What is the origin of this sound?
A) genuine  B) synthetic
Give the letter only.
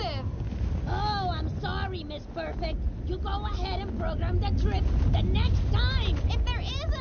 A